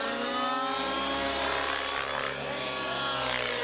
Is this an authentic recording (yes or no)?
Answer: yes